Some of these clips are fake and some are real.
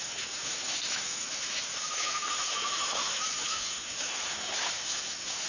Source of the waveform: fake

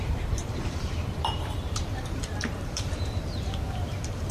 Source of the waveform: fake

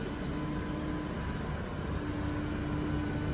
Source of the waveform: real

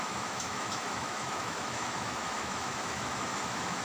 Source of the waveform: fake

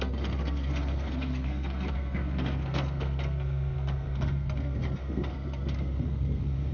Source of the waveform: fake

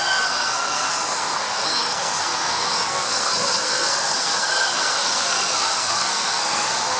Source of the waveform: fake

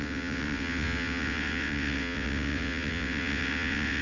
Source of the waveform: fake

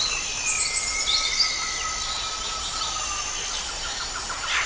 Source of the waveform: real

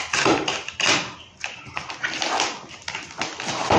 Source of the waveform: real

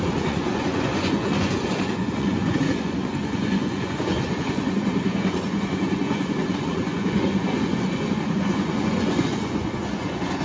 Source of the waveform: fake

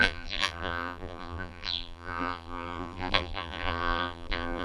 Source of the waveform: fake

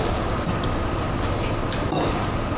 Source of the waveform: real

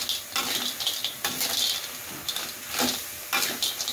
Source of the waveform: real